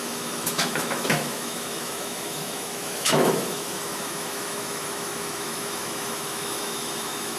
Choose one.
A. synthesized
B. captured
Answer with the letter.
A